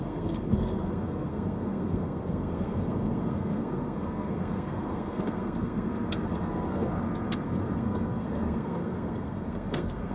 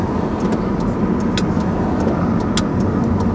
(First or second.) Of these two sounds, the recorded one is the second